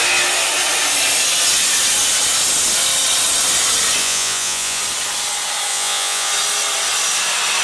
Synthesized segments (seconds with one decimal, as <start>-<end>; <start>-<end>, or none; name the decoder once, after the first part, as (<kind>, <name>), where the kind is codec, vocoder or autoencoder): 4.0-4.8 (vocoder, Vocos); 5.7-6.3